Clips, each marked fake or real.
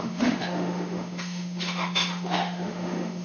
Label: fake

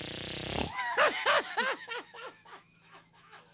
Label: fake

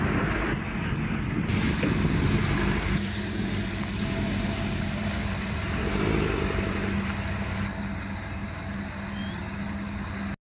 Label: real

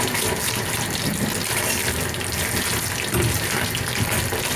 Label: real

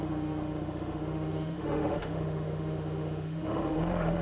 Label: fake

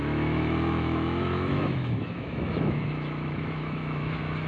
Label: fake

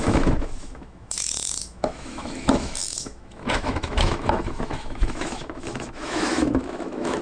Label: fake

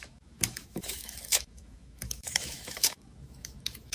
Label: fake